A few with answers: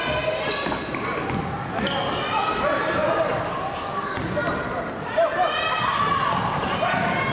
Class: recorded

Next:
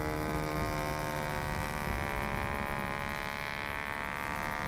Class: recorded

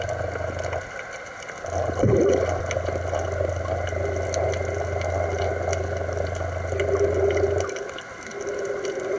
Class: recorded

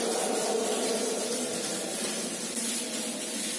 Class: remade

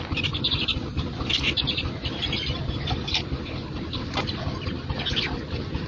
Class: recorded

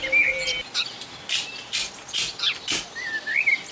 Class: recorded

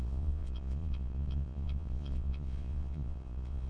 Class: remade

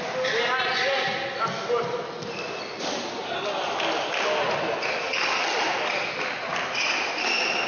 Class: recorded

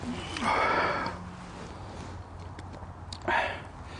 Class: recorded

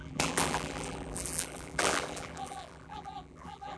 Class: remade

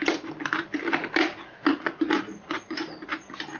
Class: recorded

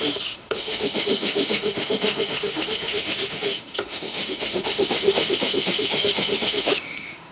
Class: remade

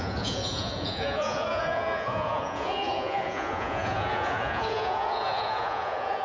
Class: remade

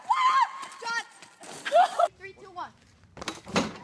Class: recorded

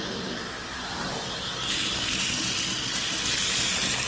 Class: recorded